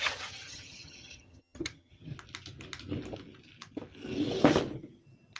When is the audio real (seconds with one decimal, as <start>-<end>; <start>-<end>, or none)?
2.1-5.4